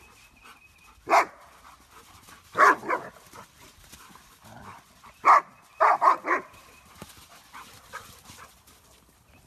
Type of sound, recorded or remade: remade